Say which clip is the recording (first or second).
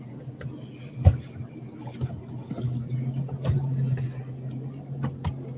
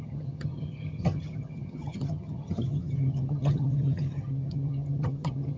first